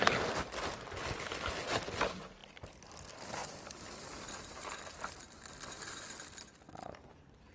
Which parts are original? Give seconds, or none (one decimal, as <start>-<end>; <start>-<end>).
0.0-3.4; 4.7-7.5